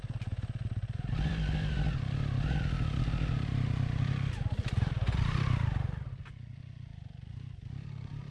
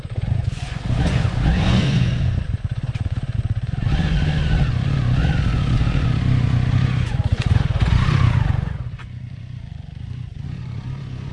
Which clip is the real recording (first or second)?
first